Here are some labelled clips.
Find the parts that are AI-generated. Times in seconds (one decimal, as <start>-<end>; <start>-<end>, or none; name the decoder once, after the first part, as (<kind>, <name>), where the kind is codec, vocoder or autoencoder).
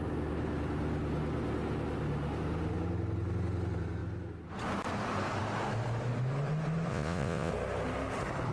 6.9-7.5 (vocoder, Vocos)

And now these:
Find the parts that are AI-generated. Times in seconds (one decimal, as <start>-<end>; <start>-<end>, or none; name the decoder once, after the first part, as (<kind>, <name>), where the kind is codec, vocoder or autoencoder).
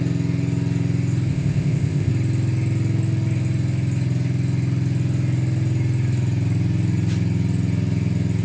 1.3-2.1 (codec, ZipCodec)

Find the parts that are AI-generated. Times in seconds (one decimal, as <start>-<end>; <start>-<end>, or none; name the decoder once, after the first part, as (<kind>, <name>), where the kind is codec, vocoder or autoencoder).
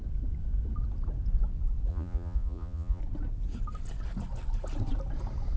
1.9-3.0 (vocoder, Vocos)